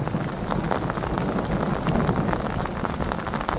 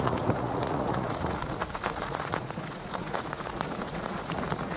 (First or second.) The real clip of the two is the first